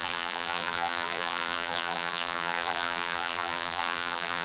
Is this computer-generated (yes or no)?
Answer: yes